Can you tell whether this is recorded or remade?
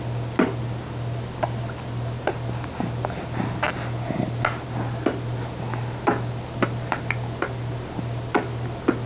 recorded